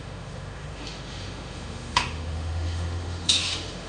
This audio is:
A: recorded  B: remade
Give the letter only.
B